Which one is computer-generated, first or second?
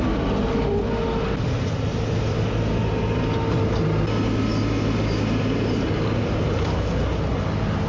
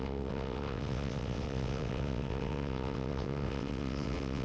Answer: second